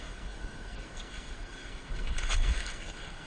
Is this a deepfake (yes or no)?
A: yes